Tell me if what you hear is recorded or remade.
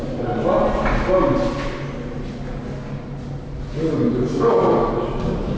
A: recorded